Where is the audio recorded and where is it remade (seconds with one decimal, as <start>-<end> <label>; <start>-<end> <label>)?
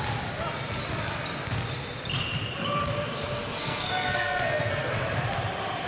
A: 0.0-3.6 recorded; 3.6-4.9 remade; 4.9-5.9 recorded